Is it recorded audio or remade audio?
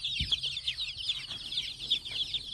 recorded